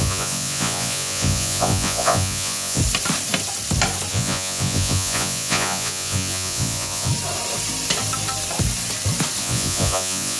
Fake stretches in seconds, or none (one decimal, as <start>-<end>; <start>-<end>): 0.0-2.8; 4.1-7.1; 9.4-10.4